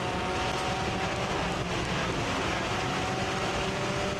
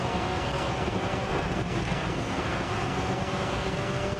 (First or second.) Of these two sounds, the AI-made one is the second